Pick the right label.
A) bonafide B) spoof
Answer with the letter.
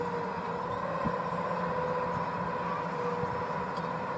A